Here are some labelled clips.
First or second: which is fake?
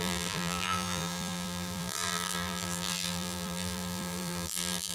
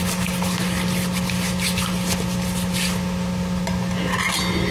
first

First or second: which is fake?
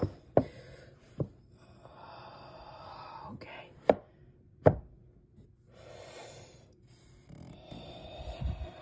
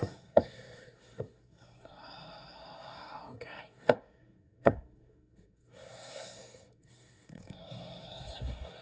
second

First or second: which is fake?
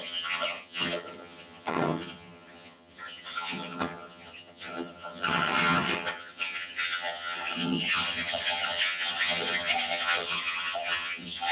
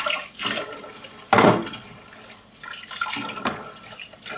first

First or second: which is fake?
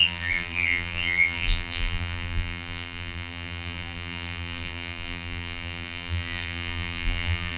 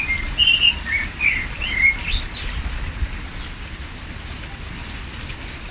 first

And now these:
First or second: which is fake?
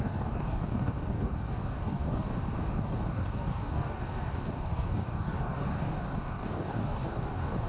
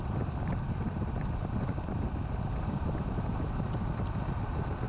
first